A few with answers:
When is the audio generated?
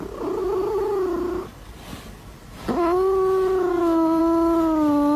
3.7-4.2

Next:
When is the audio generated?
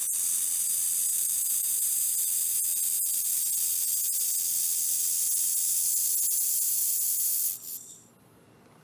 1.1-2.1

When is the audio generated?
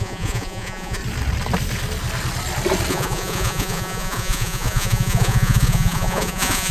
0.0-1.0; 2.9-6.7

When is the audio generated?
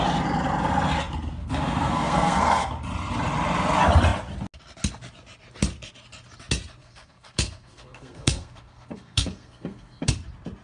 1.4-2.7; 6.8-10.1